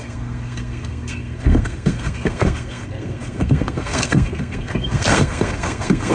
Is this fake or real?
fake